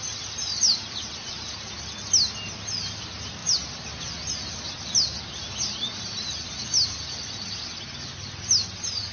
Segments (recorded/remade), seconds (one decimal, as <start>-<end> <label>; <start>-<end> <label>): 0.0-9.1 recorded